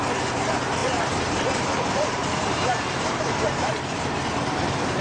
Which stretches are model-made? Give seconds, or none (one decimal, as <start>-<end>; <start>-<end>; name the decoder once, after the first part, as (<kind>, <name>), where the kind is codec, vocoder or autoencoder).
0.0-5.0 (vocoder, BigVGAN v2)